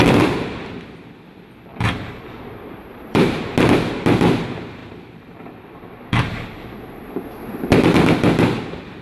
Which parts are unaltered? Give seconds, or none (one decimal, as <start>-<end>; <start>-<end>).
0.0-1.7; 3.4-4.8; 6.9-9.0

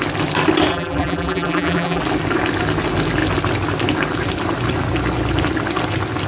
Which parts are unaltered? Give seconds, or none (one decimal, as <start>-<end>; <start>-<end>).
0.0-0.7; 2.0-6.3

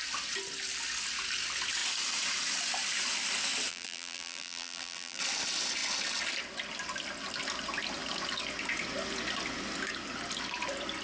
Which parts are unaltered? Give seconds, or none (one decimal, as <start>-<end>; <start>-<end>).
0.0-3.7; 5.2-11.0